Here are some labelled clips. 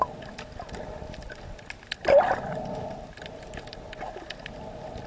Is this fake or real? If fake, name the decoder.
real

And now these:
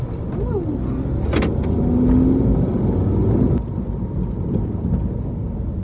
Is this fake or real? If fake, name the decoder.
real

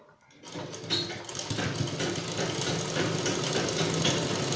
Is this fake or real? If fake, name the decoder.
real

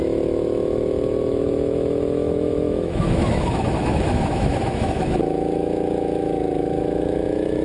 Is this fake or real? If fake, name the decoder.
fake, autoencoder, DAC-VAE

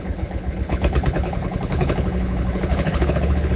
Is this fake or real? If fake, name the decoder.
fake, codec, HILCodec